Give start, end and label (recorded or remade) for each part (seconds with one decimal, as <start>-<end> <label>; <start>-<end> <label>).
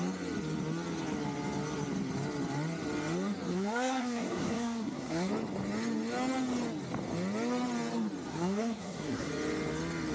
0.0-3.5 recorded; 3.5-5.3 remade; 5.3-8.3 recorded; 8.3-9.3 remade; 9.3-10.1 recorded